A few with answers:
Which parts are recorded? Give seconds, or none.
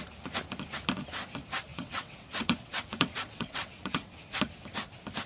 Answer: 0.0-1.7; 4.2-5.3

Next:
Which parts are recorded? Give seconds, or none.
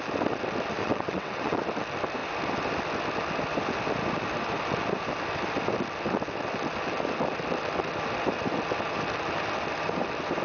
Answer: 0.0-0.8; 1.6-10.4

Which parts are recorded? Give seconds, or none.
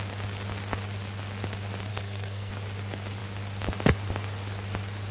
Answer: 0.0-1.9; 2.5-5.1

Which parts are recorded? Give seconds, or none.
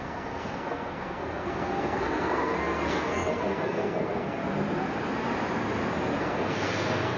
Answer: 4.4-6.2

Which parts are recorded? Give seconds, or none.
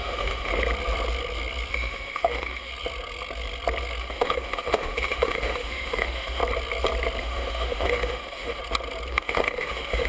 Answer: 0.5-1.7; 2.7-4.0; 6.4-7.2; 8.6-9.1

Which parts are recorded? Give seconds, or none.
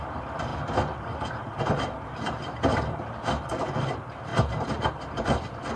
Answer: 4.3-4.9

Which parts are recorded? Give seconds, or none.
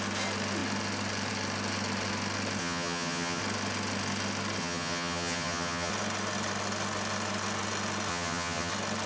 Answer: 0.0-2.6; 3.4-4.6; 5.9-8.1; 8.7-9.1